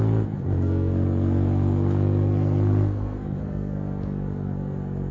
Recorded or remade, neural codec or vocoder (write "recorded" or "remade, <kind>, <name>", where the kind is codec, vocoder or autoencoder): remade, codec, SNAC